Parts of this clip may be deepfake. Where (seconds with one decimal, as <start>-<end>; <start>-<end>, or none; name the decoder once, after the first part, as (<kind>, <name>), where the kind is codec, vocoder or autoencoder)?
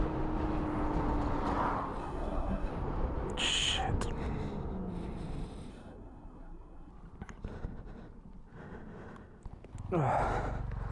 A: 2.0-2.7 (codec, SNAC); 5.7-6.9